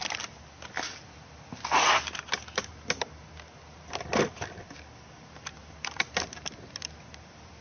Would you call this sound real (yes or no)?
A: yes